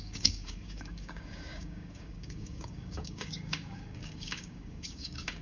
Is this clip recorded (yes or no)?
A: no